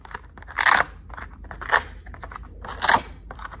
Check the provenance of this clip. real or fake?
real